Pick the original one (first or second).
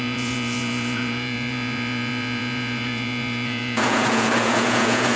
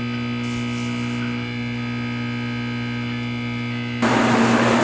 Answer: second